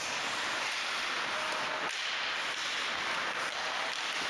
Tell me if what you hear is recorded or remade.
remade